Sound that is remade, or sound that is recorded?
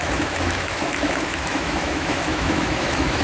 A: remade